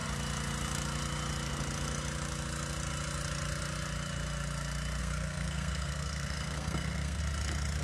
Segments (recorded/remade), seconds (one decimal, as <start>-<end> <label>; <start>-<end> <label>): 0.0-5.0 recorded; 5.0-7.2 remade; 7.2-7.8 recorded

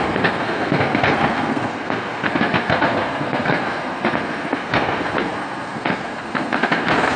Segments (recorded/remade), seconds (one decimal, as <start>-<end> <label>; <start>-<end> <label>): 0.0-7.2 remade

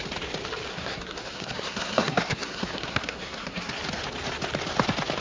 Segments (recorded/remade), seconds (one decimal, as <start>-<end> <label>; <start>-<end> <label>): 0.0-0.7 recorded; 0.7-3.8 remade; 3.8-5.2 recorded

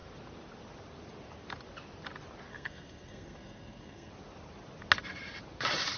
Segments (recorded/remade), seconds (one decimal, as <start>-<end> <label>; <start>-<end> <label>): 0.0-2.5 recorded; 2.5-4.1 remade; 4.1-6.0 recorded

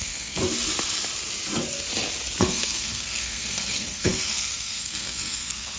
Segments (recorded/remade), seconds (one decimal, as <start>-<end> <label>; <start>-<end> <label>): 0.0-0.4 remade; 0.4-2.4 recorded; 2.4-5.8 remade